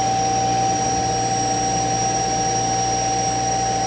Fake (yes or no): no